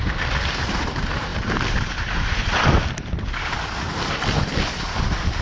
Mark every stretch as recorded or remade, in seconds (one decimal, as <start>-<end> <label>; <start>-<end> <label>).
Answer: 0.0-5.4 recorded